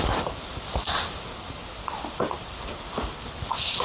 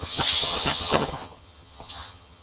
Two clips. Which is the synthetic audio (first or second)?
second